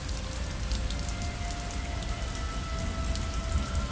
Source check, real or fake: real